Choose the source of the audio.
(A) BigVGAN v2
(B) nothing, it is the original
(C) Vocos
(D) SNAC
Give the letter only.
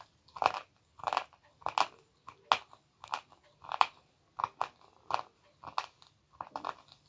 B